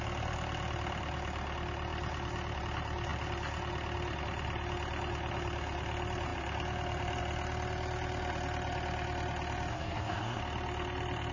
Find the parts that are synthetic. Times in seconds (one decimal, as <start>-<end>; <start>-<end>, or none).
9.7-10.4